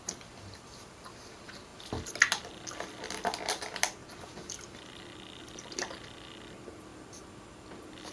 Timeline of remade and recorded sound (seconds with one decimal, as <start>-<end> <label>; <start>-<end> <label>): 0.0-1.7 remade; 1.7-3.4 recorded; 3.4-4.0 remade; 4.0-5.4 recorded; 5.4-6.9 remade; 6.9-8.1 recorded